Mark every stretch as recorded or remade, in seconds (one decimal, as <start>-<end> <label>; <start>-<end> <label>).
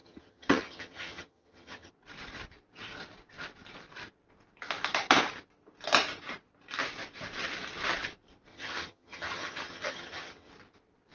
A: 0.0-1.9 remade; 1.9-8.5 recorded; 8.5-10.5 remade; 10.5-11.1 recorded